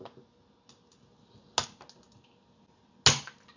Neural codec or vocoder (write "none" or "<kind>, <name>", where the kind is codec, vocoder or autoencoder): none